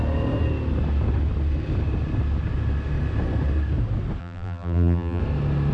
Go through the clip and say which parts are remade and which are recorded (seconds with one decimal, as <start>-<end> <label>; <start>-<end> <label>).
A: 0.0-4.2 recorded; 4.2-5.2 remade; 5.2-5.7 recorded